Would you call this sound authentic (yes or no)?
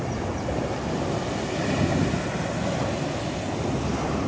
yes